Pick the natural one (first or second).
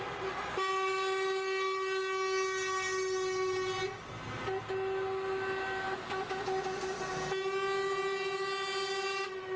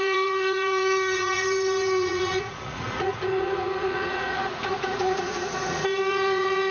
first